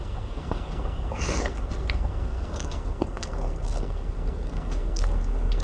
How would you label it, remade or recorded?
remade